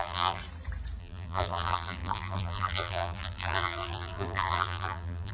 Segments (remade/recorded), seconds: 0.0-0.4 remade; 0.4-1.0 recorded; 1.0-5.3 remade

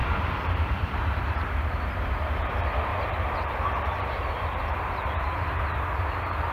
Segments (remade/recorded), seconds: 0.0-1.0 remade; 1.0-2.9 recorded; 2.9-5.6 remade; 5.6-6.5 recorded

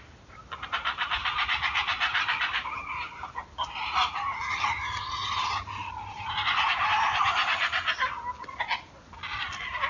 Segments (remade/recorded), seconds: 0.0-9.9 recorded